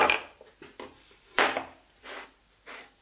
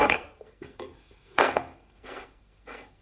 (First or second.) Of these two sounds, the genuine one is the first